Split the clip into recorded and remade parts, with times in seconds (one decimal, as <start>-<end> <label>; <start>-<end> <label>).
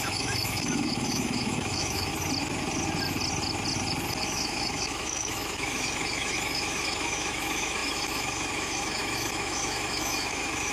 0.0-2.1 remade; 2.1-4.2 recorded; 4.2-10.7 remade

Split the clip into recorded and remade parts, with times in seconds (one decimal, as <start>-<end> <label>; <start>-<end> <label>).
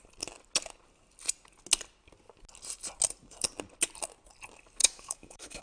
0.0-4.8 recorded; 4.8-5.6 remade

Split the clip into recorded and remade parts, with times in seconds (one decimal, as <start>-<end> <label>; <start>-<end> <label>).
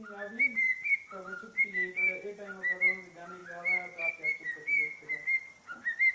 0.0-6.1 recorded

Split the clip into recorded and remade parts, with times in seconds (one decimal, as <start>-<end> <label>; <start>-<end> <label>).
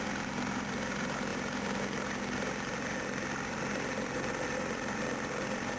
0.0-5.8 recorded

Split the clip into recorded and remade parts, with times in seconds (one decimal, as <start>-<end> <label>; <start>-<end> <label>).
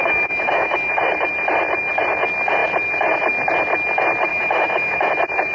0.0-0.9 remade; 0.9-4.3 recorded; 4.3-5.1 remade; 5.1-5.5 recorded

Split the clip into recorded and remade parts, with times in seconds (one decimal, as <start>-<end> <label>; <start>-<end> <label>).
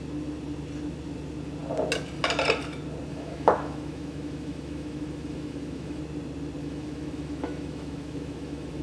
0.0-3.1 recorded; 3.1-6.0 remade; 6.0-6.6 recorded; 6.6-8.8 remade